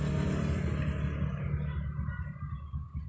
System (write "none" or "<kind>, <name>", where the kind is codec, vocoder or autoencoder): none